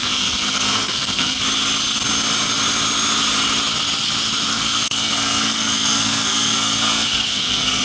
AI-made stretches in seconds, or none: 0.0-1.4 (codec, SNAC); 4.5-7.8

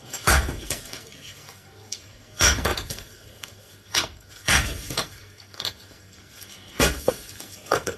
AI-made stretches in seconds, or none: 0.0-8.0 (codec, SNAC)